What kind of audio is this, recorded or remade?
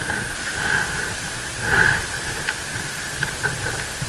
recorded